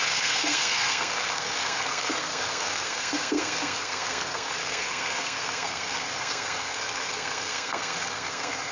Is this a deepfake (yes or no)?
yes